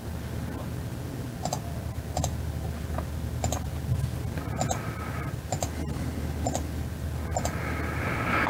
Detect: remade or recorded recorded